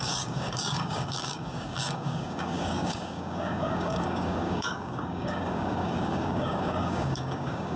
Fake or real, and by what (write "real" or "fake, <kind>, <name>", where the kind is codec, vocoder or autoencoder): fake, codec, DAC